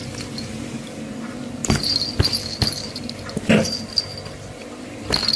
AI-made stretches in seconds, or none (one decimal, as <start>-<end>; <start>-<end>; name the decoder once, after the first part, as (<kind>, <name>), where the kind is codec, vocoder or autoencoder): none

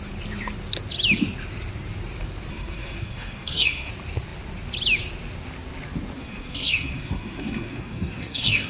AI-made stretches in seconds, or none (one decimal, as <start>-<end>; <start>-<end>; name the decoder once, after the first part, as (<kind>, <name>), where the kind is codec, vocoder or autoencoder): 2.5-3.9 (codec, SNAC); 6.2-8.7

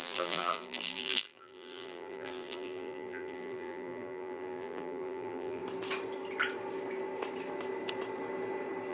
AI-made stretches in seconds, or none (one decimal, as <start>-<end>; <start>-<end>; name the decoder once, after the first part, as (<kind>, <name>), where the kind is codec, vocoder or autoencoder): 0.0-5.6 (vocoder, BigVGAN v2)

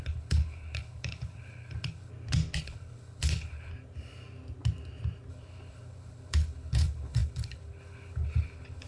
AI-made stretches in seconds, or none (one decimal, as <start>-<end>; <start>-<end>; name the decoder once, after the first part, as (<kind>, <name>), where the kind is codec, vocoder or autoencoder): 0.0-2.1 (codec, HILCodec); 2.6-3.7; 5.3-8.9

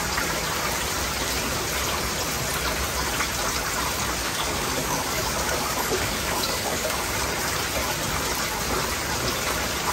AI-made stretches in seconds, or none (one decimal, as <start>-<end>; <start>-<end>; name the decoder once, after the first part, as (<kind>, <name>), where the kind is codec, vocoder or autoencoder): 4.2-7.1 (codec, DAC)

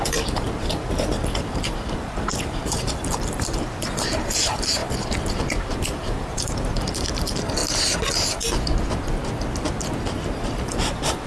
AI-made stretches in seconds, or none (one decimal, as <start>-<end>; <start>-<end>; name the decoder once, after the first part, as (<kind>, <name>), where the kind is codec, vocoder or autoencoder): 0.0-4.8 (vocoder, BigVGAN v2); 5.6-7.6; 10.7-11.3

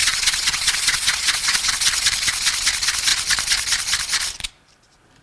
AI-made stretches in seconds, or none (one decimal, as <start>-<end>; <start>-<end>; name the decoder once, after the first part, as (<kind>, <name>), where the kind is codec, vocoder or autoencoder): 0.0-1.7 (vocoder, Vocos)